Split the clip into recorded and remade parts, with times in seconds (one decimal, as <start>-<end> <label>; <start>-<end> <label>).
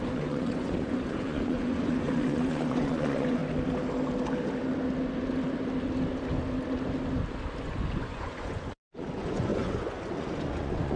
0.0-3.4 remade; 3.4-7.6 recorded; 7.6-11.0 remade